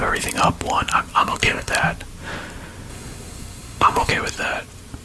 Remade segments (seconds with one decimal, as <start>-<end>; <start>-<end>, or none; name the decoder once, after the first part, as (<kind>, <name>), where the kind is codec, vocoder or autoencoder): 1.2-1.7 (codec, SNAC); 2.9-4.1